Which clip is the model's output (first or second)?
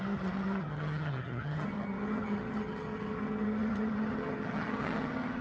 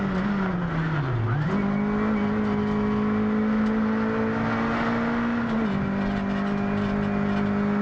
first